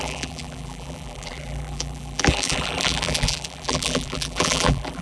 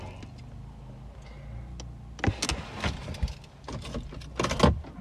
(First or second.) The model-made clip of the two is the first